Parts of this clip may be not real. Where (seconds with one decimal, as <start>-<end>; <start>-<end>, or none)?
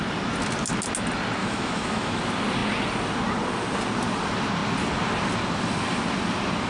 1.4-2.2